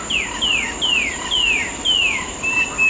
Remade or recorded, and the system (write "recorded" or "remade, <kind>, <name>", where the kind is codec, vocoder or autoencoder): recorded